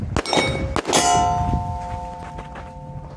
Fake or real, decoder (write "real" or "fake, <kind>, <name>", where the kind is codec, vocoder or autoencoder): real